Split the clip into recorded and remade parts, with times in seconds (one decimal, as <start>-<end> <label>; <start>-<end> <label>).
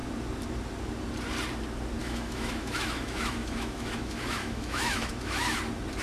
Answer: 0.0-2.0 recorded; 2.0-5.6 remade; 5.6-6.0 recorded